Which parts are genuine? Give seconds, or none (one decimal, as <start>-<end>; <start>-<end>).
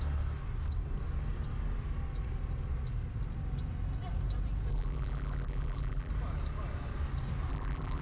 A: 0.0-4.7; 6.1-7.5